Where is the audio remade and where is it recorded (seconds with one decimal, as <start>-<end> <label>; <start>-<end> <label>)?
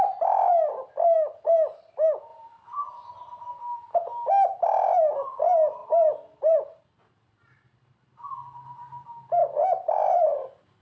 0.0-5.8 recorded; 5.8-6.8 remade; 6.8-9.4 recorded; 9.4-10.0 remade; 10.0-10.8 recorded